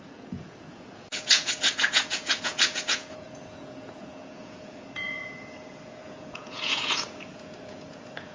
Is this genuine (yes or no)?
no